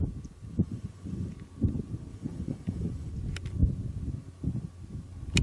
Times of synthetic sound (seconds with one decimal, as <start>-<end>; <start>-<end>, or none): 0.5-1.3; 2.1-3.1